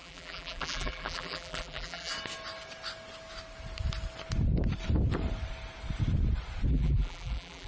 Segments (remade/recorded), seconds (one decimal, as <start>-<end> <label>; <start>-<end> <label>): 0.0-2.1 remade; 2.1-6.7 recorded; 6.7-7.7 remade